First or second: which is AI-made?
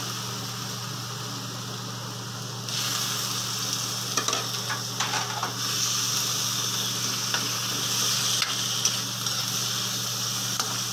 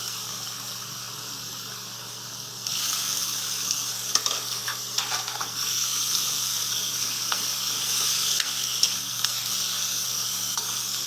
second